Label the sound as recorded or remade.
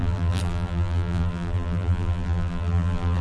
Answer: remade